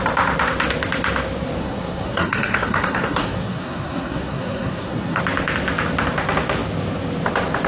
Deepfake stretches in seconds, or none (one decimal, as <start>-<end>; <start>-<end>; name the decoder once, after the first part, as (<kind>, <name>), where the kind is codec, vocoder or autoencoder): 1.6-5.2 (codec, SNAC)